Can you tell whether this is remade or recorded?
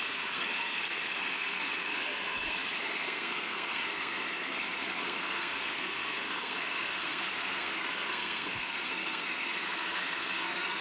remade